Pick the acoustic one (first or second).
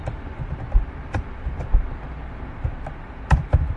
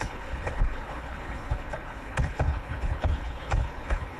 first